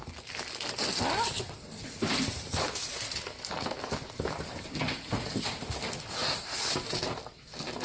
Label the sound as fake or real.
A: real